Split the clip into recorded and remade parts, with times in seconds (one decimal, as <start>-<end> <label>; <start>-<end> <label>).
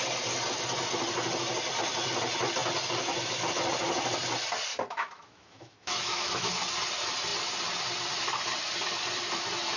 0.0-4.7 recorded; 4.7-6.5 remade; 6.5-9.8 recorded